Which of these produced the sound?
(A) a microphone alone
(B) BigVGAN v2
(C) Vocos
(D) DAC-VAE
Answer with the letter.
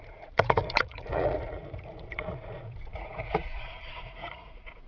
C